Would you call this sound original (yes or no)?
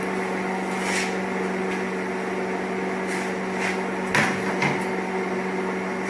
yes